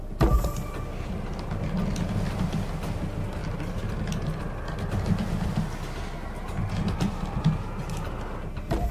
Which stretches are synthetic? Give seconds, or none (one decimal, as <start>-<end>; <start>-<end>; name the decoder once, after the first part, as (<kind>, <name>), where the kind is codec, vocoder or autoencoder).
none